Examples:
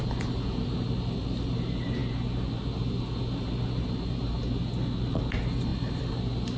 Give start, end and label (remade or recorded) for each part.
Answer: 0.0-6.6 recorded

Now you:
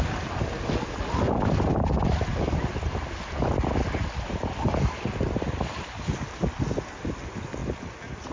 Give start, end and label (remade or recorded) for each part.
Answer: 0.0-8.3 recorded

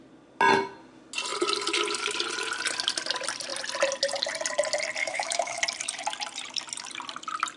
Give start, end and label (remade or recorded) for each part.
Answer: 0.0-5.0 recorded; 5.0-5.6 remade; 5.6-7.6 recorded

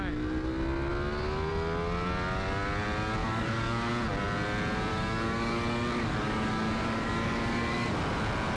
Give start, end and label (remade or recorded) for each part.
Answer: 0.0-3.2 recorded; 3.2-3.9 remade; 3.9-4.9 recorded; 4.9-7.9 remade; 7.9-8.6 recorded

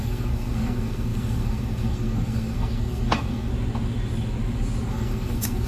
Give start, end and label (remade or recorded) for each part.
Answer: 0.0-3.5 remade; 3.5-4.9 recorded; 4.9-5.7 remade